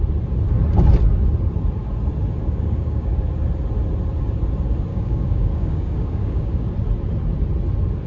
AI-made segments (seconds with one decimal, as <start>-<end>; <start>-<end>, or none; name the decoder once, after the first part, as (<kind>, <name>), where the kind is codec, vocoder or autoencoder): 2.4-3.3 (codec, DAC); 4.9-6.7